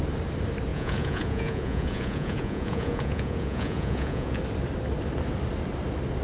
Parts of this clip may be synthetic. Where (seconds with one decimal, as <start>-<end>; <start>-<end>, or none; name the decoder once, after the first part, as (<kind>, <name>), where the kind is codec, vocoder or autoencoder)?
0.7-4.4 (vocoder, Vocos)